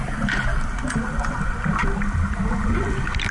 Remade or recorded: recorded